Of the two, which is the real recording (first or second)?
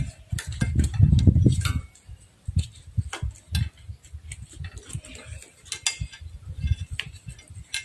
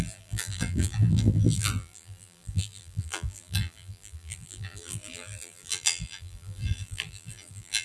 first